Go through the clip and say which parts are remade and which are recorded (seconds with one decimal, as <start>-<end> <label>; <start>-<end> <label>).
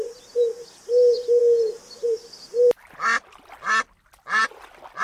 0.0-5.0 recorded